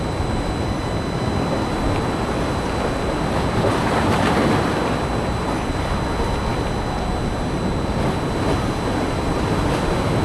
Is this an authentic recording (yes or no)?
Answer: yes